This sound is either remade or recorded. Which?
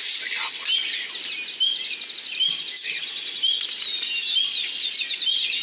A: recorded